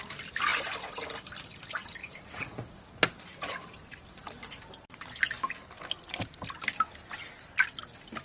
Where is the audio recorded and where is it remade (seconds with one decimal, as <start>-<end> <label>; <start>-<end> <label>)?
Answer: 0.0-2.0 recorded; 2.0-2.8 remade; 2.8-8.2 recorded